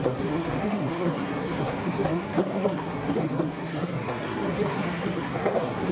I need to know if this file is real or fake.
fake